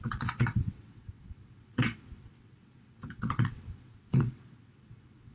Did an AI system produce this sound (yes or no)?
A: yes